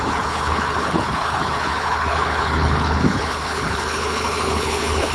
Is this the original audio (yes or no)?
no